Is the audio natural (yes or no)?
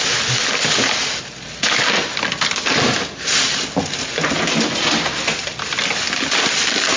yes